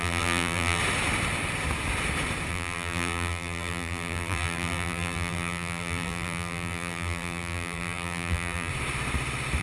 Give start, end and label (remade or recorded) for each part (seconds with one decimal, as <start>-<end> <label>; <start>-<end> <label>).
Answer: 0.0-0.8 remade; 0.8-2.5 recorded; 2.5-8.7 remade; 8.7-9.6 recorded